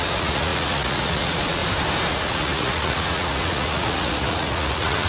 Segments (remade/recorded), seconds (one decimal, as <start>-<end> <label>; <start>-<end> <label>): 0.0-1.6 remade; 1.6-2.1 recorded; 2.1-5.1 remade